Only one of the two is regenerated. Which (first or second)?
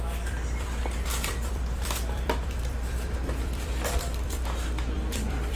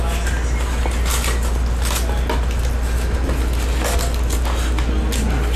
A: first